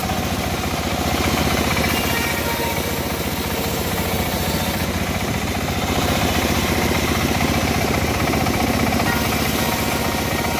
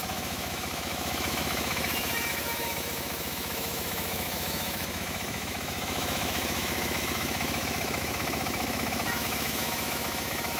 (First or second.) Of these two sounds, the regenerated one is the second